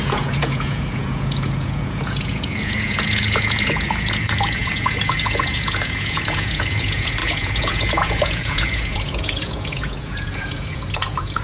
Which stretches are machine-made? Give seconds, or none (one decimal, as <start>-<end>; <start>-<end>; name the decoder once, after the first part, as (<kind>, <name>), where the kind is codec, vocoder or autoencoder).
0.0-11.4 (vocoder, Vocos)